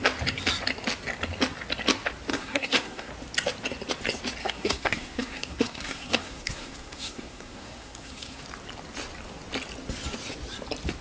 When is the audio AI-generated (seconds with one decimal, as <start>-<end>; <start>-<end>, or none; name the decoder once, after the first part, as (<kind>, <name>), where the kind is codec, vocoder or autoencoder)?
2.3-3.1 (codec, SNAC); 4.4-8.4